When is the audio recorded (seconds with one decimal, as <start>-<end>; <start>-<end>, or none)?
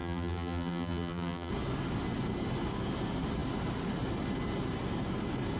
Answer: 1.5-5.6